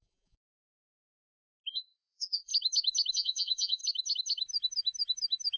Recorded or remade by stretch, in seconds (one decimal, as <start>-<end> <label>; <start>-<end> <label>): 0.0-0.6 remade; 0.6-1.7 recorded; 1.7-2.5 remade; 2.5-3.1 recorded; 3.1-3.8 remade; 3.8-5.6 recorded